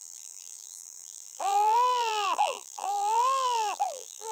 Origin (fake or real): fake